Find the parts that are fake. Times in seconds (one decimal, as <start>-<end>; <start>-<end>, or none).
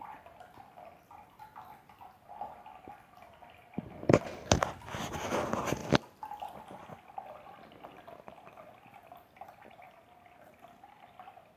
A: none